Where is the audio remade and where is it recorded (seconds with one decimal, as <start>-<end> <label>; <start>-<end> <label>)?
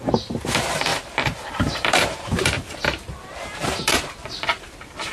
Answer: 0.0-0.9 recorded; 0.9-4.0 remade; 4.0-5.1 recorded